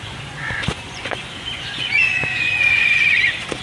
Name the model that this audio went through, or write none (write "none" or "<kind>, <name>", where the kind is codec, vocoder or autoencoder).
vocoder, Vocos